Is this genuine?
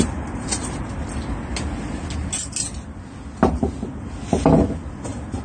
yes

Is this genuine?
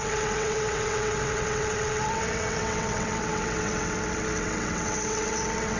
no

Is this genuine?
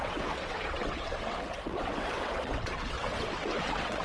no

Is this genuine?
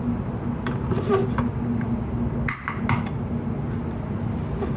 yes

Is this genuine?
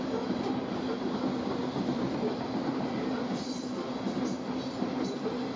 yes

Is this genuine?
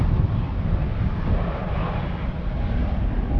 yes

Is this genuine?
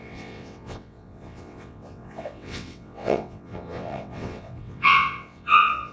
no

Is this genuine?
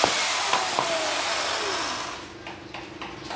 yes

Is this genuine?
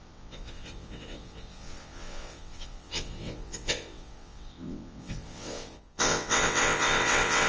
no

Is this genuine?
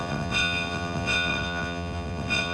no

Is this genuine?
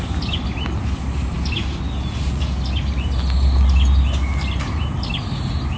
yes